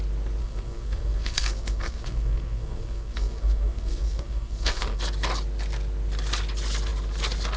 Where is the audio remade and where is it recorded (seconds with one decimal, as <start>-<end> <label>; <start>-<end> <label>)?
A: 0.0-0.4 recorded; 0.4-5.0 remade; 5.0-7.6 recorded